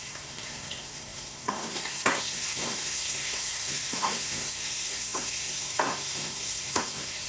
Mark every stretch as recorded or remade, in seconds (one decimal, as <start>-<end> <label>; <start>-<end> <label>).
0.0-7.3 remade